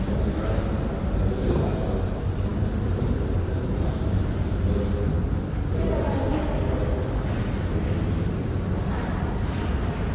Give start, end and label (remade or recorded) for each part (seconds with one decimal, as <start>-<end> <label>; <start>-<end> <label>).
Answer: 0.0-10.1 recorded